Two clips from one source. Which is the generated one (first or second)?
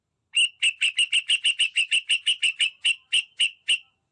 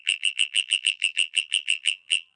second